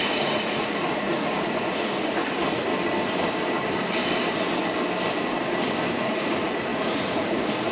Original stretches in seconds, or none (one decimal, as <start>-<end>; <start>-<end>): 2.7-5.9